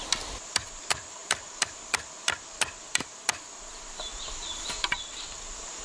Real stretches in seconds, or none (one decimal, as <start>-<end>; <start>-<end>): 0.0-1.2; 2.0-3.7; 5.2-5.8